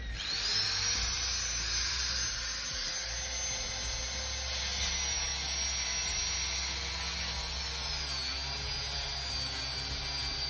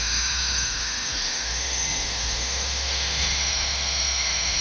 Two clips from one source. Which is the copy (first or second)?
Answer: second